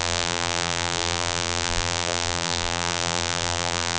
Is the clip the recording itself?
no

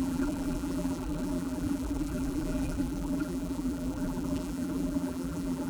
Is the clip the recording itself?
no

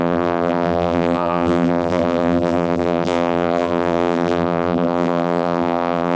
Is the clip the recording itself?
no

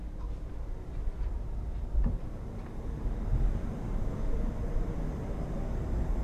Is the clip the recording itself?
no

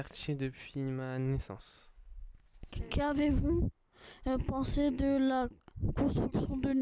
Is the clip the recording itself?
yes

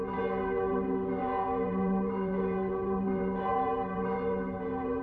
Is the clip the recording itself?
no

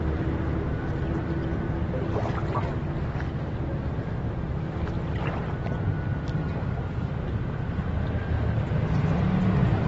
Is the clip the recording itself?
yes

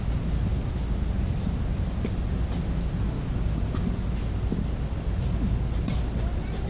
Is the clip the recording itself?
yes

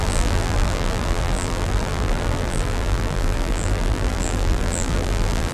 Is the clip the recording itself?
no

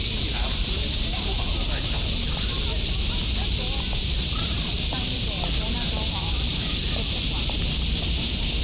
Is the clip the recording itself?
no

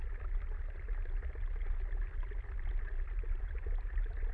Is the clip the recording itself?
yes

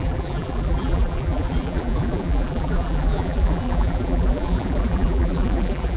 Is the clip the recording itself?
no